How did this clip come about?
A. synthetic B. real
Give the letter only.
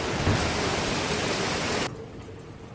B